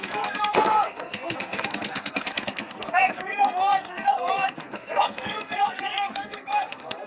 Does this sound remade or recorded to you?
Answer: remade